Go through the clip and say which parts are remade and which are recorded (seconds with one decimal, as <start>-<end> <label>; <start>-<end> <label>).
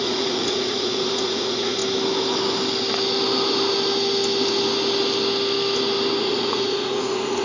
0.0-1.8 remade; 1.8-6.2 recorded; 6.2-7.4 remade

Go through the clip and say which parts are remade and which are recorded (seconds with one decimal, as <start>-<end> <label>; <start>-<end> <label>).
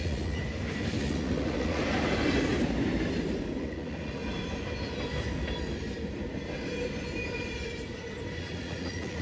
0.0-0.4 remade; 0.4-1.0 recorded; 1.0-1.8 remade; 1.8-3.6 recorded; 3.6-4.2 remade; 4.2-8.4 recorded; 8.4-9.2 remade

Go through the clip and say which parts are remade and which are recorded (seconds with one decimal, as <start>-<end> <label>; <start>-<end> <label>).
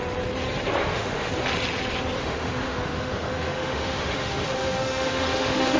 0.0-0.8 recorded; 0.8-1.3 remade; 1.3-2.2 recorded; 2.2-5.8 remade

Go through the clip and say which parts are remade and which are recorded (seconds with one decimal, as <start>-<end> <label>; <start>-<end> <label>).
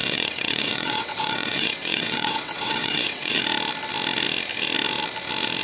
0.0-3.4 remade; 3.4-5.6 recorded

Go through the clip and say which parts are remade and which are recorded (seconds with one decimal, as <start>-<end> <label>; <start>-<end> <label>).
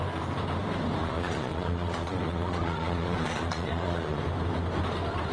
0.0-1.0 recorded; 1.0-4.2 remade; 4.2-5.3 recorded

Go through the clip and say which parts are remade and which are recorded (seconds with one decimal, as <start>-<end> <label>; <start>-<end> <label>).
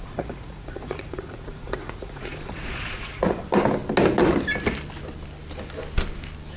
0.0-3.4 remade; 3.4-6.6 recorded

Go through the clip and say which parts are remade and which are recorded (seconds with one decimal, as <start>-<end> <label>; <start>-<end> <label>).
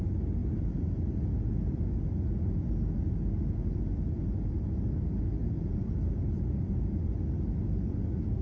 0.0-5.4 recorded; 5.4-6.9 remade; 6.9-8.4 recorded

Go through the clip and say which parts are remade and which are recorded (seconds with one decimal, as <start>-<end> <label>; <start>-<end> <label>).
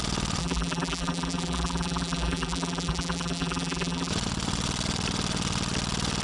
0.0-0.4 recorded; 0.4-4.1 remade; 4.1-6.2 recorded